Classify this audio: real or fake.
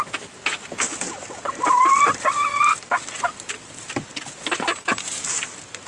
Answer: real